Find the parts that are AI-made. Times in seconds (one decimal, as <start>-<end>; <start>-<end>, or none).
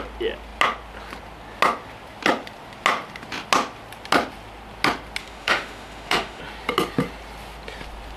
5.2-6.4